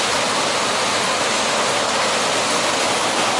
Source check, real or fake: real